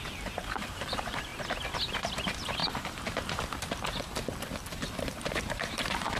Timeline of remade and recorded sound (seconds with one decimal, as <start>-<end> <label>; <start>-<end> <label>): 0.0-1.3 remade; 1.3-2.0 recorded; 2.0-2.6 remade; 2.6-5.0 recorded; 5.0-6.2 remade